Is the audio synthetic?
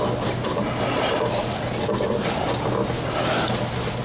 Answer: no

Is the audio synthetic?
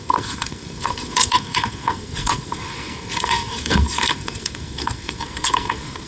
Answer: yes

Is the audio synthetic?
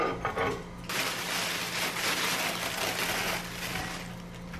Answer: no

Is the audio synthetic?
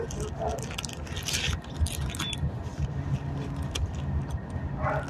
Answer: no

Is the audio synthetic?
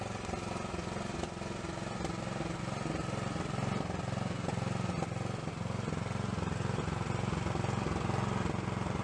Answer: no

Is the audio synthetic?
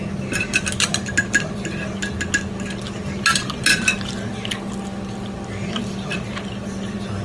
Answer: no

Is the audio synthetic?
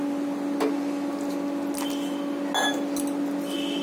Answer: no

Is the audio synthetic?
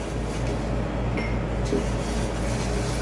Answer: no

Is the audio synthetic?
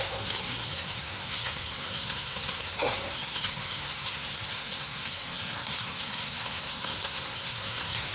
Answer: yes